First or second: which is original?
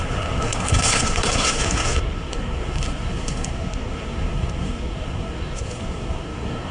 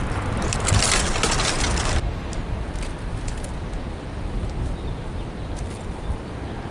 second